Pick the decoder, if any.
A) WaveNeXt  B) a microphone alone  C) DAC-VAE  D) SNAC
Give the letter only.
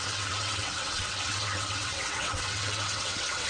A